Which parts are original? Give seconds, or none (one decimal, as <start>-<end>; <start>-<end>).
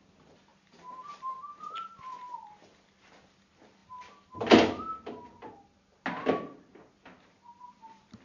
0.0-8.2